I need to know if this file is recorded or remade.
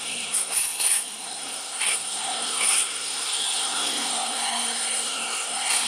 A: remade